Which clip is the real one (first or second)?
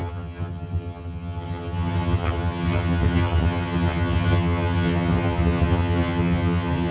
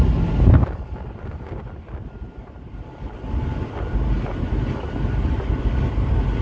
second